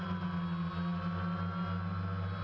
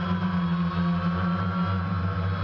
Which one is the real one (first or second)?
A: first